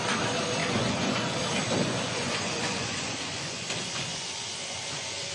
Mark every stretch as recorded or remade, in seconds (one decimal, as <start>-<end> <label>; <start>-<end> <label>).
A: 0.0-0.6 recorded; 0.6-1.4 remade; 1.4-1.8 recorded; 1.8-5.3 remade